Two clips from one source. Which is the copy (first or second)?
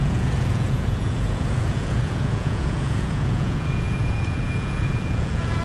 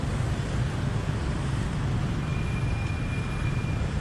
first